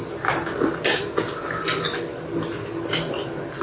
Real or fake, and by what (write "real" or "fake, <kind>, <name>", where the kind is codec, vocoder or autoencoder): real